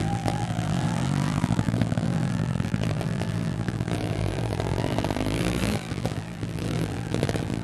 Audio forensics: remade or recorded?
remade